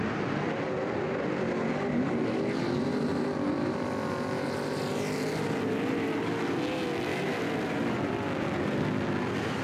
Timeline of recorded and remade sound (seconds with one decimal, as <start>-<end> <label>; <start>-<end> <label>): 0.0-7.1 recorded; 7.1-8.8 remade; 8.8-9.6 recorded